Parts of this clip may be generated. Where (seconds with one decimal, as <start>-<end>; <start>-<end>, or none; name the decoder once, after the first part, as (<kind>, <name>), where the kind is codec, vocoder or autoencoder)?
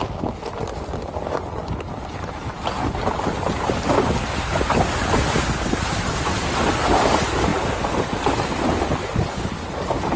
none